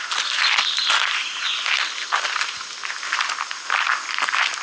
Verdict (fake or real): real